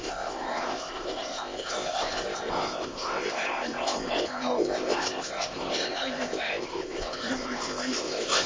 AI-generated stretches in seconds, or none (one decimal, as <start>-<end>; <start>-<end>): 0.0-8.5